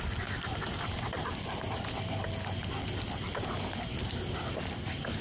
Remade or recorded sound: recorded